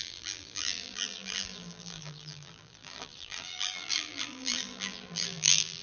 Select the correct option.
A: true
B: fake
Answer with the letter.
B